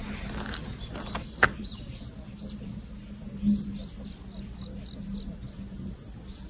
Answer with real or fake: real